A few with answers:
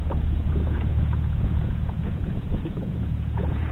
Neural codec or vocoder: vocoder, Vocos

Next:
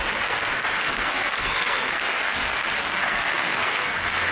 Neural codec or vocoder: codec, SNAC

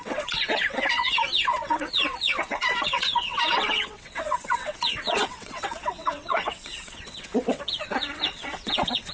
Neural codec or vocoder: vocoder, WaveNeXt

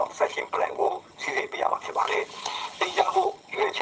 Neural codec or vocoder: vocoder, HiFi-GAN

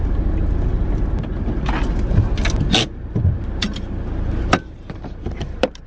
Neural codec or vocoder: none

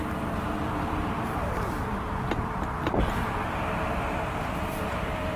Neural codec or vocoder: vocoder, BigVGAN v2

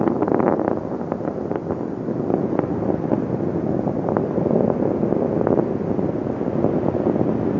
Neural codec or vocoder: none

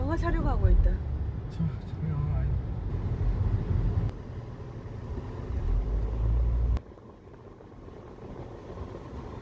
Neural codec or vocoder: none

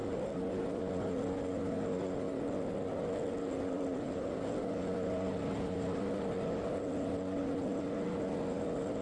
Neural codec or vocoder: none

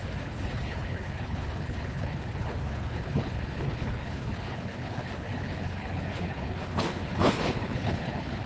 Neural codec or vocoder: codec, HILCodec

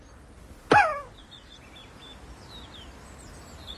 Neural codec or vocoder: none